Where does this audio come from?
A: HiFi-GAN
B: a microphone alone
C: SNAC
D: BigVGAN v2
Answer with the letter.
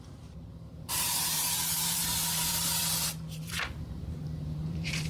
D